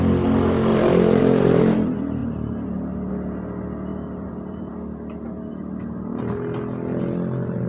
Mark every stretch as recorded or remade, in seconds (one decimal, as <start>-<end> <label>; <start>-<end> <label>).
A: 0.0-0.7 recorded; 0.7-1.6 remade; 1.6-2.2 recorded; 2.2-3.1 remade; 3.1-3.9 recorded; 3.9-4.7 remade; 4.7-7.7 recorded